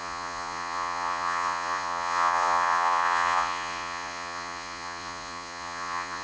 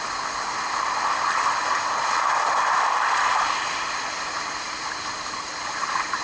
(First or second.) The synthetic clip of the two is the first